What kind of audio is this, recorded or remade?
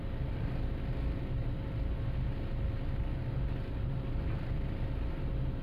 recorded